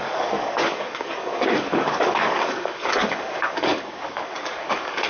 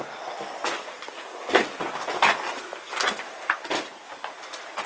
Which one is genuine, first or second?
second